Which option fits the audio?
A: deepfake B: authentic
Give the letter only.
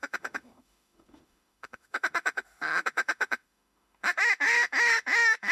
A